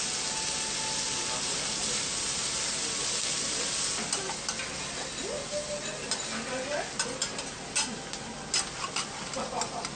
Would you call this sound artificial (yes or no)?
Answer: no